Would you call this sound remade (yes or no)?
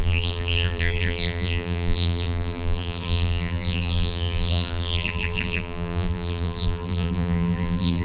yes